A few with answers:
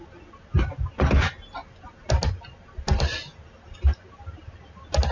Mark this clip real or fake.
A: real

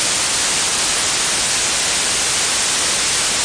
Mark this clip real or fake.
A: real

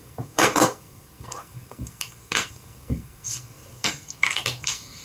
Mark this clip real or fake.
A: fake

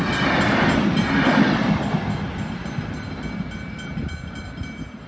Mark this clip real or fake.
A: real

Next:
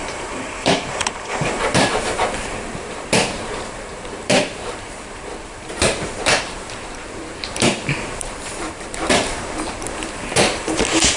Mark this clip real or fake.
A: fake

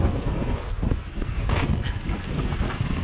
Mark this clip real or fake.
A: fake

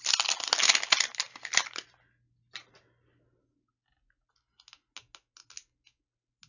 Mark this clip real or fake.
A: real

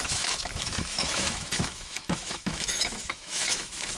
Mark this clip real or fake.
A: fake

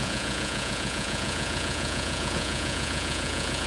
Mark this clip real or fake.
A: fake